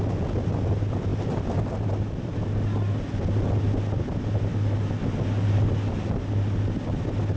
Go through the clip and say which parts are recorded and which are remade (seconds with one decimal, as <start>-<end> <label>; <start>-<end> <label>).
0.0-7.4 recorded